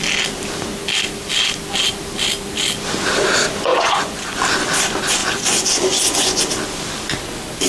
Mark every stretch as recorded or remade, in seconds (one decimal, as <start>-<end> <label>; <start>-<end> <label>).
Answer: 0.0-3.7 recorded; 3.7-4.4 remade; 4.4-5.2 recorded; 5.2-6.4 remade; 6.4-7.7 recorded